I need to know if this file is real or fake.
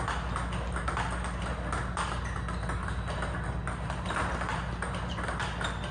real